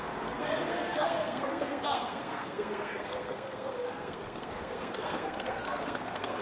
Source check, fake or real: fake